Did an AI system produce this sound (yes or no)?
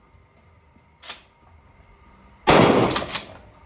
no